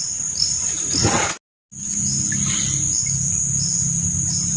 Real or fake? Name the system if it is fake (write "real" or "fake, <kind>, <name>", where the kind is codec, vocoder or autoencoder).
real